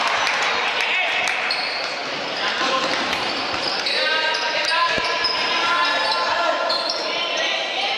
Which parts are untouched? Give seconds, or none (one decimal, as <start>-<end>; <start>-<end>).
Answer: none